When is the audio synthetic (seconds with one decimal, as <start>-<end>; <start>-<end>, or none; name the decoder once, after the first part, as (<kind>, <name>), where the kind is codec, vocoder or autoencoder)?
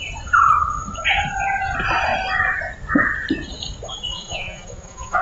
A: 4.1-5.2 (vocoder, Vocos)